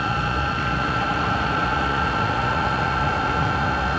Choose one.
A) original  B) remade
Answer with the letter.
B